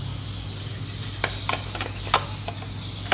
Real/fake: real